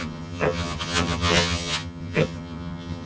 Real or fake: fake